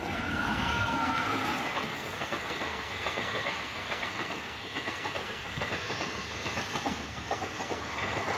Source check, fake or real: fake